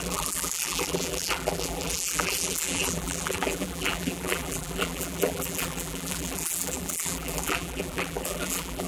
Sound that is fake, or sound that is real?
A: fake